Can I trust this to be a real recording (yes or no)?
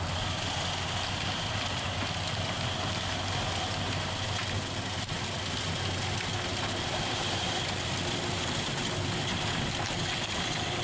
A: yes